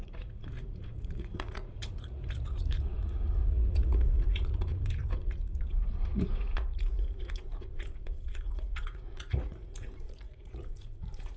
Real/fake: fake